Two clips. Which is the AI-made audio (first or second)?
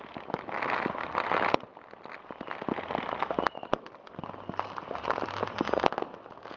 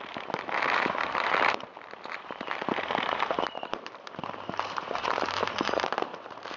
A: second